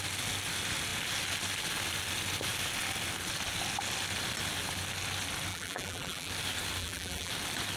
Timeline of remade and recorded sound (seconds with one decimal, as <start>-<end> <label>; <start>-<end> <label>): 0.0-5.5 recorded; 5.5-6.3 remade; 6.3-6.8 recorded; 6.8-7.3 remade; 7.3-7.8 recorded

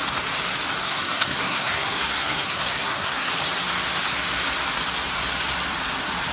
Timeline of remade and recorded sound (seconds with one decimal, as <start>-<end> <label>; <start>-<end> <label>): 0.0-0.8 recorded; 0.8-3.3 remade; 3.3-6.3 recorded

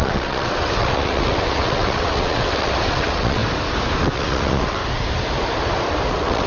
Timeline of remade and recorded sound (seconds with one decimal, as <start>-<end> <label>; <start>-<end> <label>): 0.0-3.4 remade; 3.4-4.0 recorded; 4.0-4.8 remade; 4.8-6.1 recorded; 6.1-6.5 remade

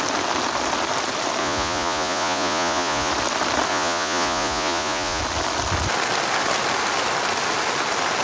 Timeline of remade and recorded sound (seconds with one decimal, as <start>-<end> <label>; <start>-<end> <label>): 0.0-1.4 recorded; 1.4-3.1 remade; 3.1-3.7 recorded; 3.7-5.2 remade; 5.2-8.2 recorded

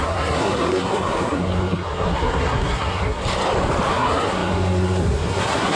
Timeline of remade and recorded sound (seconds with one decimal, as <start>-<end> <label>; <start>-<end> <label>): 0.0-3.2 remade; 3.2-3.9 recorded; 3.9-5.8 remade